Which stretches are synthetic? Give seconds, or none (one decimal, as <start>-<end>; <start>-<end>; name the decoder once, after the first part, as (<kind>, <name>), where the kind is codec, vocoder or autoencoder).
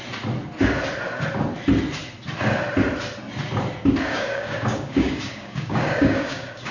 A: 4.1-6.7 (codec, DAC)